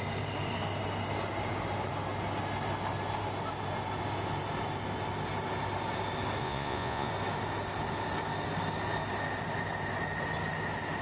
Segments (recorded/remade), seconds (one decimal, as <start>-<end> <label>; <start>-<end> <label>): 0.0-6.4 recorded; 6.4-7.1 remade; 7.1-11.0 recorded